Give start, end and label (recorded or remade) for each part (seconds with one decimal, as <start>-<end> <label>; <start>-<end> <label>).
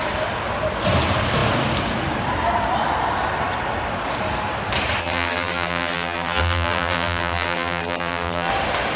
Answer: 0.0-5.0 recorded; 5.0-8.5 remade; 8.5-9.0 recorded